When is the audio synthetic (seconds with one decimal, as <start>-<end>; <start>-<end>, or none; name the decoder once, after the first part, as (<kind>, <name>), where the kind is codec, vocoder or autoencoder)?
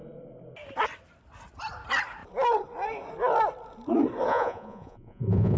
4.3-5.6 (vocoder, Vocos)